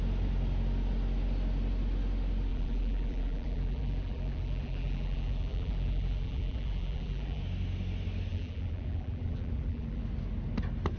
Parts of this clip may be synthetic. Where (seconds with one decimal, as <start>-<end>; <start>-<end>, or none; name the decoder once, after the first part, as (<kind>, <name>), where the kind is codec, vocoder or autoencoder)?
2.5-7.4 (vocoder, BigVGAN v2); 8.3-10.0